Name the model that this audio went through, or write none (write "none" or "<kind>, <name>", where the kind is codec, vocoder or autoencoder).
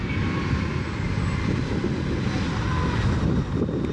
none